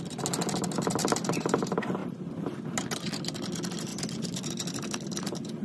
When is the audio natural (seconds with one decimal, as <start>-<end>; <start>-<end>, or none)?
0.0-1.0; 1.6-3.9; 4.5-5.6